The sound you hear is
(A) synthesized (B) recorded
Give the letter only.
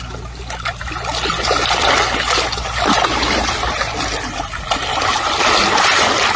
B